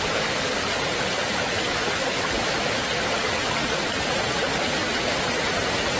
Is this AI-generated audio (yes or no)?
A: yes